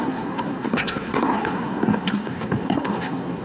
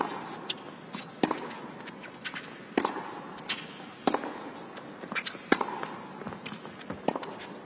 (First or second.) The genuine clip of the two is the second